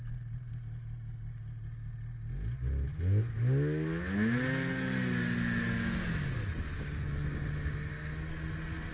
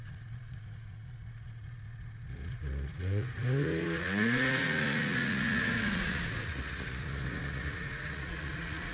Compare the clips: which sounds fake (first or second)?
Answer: second